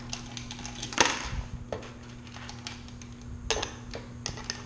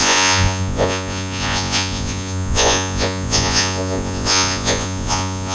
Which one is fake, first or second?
second